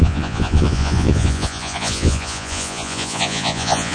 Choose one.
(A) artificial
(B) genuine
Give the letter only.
A